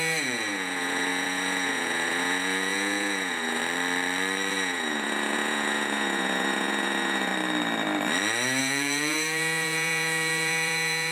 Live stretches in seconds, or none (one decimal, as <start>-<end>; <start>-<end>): 3.6-4.5; 7.3-8.6

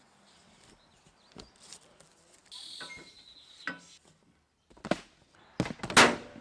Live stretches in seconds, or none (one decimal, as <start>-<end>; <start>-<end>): 0.0-6.4

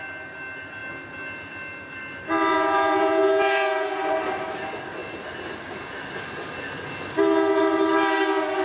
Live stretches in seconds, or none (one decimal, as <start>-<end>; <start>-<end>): 0.0-2.5; 4.0-8.6

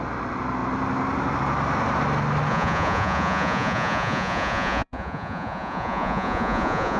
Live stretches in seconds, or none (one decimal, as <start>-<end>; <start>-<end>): 0.0-2.5

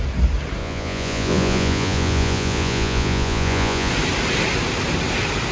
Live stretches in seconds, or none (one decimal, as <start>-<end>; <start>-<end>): 0.0-0.6; 3.9-5.5